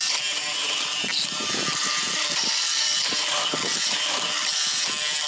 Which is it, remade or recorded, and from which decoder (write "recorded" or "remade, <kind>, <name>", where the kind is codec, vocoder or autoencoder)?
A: remade, vocoder, BigVGAN v2